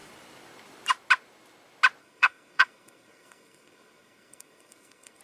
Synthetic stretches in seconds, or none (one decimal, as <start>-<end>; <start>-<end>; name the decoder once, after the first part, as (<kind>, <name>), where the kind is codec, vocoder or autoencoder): 2.0-5.2 (codec, SNAC)